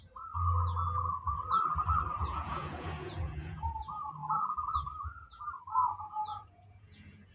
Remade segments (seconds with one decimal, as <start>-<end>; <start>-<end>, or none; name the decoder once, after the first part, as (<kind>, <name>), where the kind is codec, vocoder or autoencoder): 2.2-3.8 (vocoder, Vocos); 4.2-5.6; 6.3-7.3